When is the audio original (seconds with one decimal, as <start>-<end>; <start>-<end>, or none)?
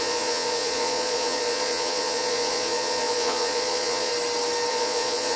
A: 4.1-4.7